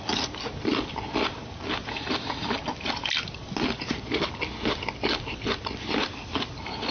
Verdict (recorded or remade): recorded